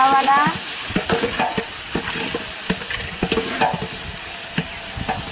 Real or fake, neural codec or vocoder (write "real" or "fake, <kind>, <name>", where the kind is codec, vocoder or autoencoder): real